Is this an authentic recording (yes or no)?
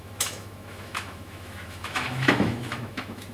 no